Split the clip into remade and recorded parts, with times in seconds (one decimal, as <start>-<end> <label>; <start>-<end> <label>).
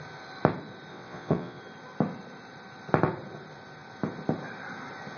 0.0-0.9 recorded; 0.9-1.6 remade; 1.6-5.2 recorded